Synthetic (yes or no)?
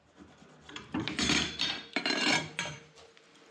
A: yes